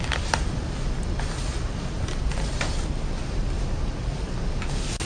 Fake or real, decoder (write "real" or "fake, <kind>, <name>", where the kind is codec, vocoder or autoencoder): real